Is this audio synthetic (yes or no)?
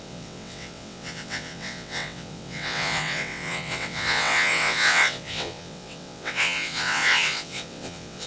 yes